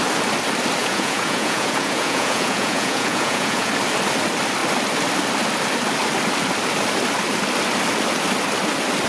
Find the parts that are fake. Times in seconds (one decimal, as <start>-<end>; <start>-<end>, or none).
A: 0.8-3.7